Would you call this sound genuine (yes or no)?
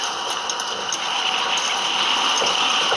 yes